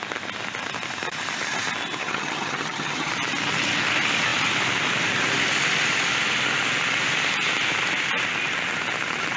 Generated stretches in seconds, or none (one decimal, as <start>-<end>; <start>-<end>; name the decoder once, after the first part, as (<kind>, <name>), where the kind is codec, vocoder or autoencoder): 2.0-3.1 (vocoder, HiFi-GAN)